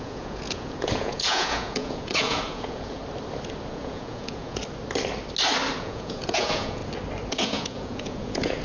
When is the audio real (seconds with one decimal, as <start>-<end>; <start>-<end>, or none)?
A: 3.0-3.7; 4.6-5.8; 6.8-7.3